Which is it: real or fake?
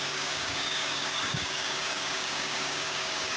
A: fake